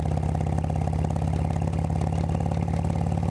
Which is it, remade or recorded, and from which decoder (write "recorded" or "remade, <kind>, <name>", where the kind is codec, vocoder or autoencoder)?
recorded